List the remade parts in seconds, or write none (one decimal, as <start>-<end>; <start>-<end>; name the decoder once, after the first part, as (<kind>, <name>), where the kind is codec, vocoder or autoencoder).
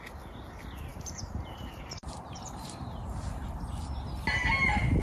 0.9-3.8 (vocoder, BigVGAN v2)